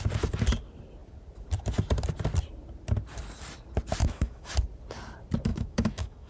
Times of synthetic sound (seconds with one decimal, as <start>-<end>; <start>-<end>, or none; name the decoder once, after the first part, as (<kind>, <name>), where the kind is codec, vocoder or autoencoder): 4.0-4.5 (autoencoder, DAC-VAE); 5.5-6.3